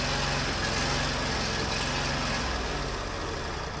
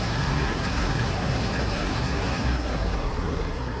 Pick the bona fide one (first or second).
first